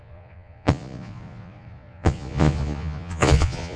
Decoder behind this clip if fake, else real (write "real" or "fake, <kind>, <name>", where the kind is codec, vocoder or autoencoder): fake, vocoder, Vocos